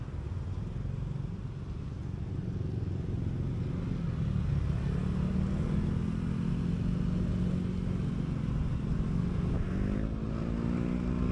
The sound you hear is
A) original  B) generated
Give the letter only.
A